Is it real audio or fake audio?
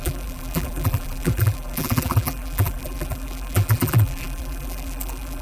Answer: fake